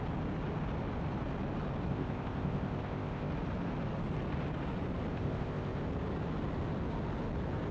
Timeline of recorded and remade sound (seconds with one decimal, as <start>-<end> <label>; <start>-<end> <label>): 0.0-1.9 recorded; 1.9-3.3 remade; 3.3-5.1 recorded; 5.1-5.8 remade; 5.8-7.7 recorded